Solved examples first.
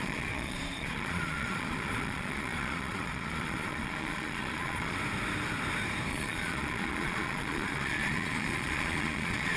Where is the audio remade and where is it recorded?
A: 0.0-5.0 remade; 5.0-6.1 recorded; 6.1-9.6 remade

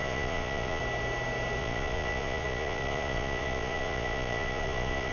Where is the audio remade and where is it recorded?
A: 0.0-0.8 remade; 0.8-1.6 recorded; 1.6-5.1 remade

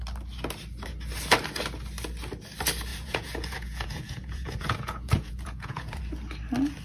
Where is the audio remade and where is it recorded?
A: 0.0-2.9 recorded; 2.9-6.0 remade; 6.0-6.8 recorded

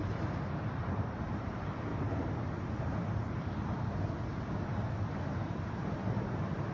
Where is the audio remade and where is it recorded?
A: 0.0-1.9 remade; 1.9-5.1 recorded; 5.1-6.0 remade; 6.0-6.7 recorded

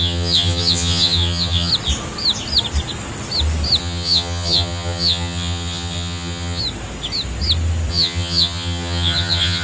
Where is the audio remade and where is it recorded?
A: 0.0-1.7 remade; 1.7-3.8 recorded; 3.8-6.6 remade; 6.6-7.9 recorded; 7.9-9.6 remade

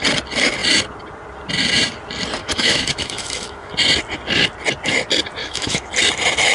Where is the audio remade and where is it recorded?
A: 0.0-2.4 recorded; 2.4-3.7 remade; 3.7-5.4 recorded; 5.4-5.9 remade; 5.9-6.5 recorded